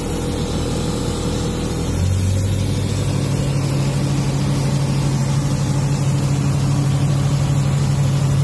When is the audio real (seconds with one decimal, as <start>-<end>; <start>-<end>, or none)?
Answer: 0.0-8.4